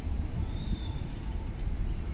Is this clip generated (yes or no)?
yes